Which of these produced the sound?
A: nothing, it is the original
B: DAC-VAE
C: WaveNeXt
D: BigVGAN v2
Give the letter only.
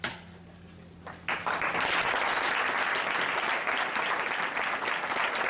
A